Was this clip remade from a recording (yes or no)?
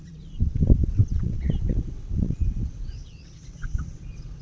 yes